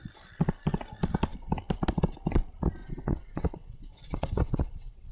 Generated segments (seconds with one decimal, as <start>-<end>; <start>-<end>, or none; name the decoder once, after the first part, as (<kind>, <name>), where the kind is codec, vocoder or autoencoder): 2.8-5.1 (vocoder, WaveNeXt)